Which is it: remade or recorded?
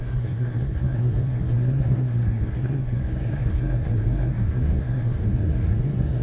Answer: remade